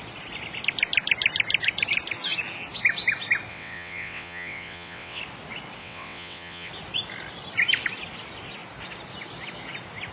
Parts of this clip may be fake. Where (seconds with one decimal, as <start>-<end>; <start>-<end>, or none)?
3.5-5.2; 5.8-6.7